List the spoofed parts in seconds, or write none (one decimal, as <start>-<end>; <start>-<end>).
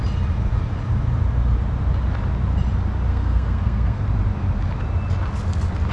3.1-4.0